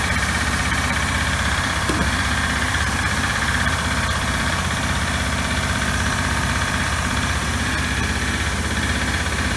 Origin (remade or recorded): remade